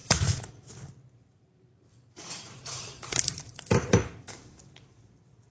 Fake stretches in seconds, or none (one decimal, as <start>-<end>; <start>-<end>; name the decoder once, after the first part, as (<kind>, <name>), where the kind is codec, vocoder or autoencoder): 0.0-0.5 (vocoder, BigVGAN v2); 1.3-4.6